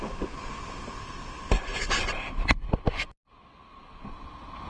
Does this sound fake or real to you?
real